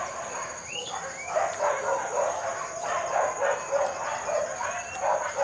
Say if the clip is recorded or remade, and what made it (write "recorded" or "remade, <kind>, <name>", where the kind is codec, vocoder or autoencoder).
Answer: recorded